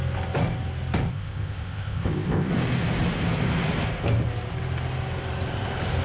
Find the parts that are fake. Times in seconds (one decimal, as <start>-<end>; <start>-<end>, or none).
1.1-2.5